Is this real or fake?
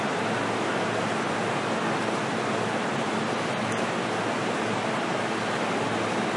real